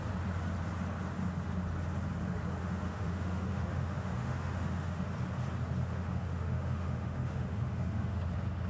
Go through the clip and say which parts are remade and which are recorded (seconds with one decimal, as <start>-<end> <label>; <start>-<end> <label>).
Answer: 0.0-2.6 recorded; 2.6-5.1 remade; 5.1-5.8 recorded; 5.8-8.2 remade; 8.2-8.7 recorded